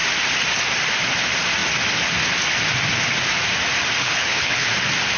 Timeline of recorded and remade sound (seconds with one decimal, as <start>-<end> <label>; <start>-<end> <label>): 0.0-4.0 recorded; 4.0-4.7 remade; 4.7-5.2 recorded